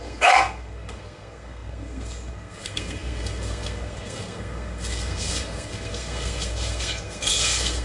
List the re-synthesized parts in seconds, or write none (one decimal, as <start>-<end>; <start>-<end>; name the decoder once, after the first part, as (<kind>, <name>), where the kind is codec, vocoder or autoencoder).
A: 0.0-7.8 (codec, SNAC)